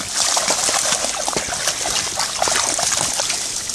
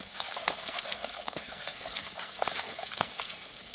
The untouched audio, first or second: first